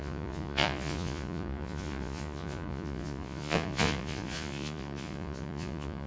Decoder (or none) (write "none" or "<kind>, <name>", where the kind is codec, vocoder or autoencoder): vocoder, Vocos